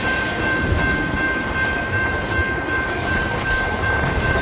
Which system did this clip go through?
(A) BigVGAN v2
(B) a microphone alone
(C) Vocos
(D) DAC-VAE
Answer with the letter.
A